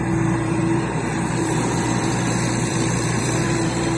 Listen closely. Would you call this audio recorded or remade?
remade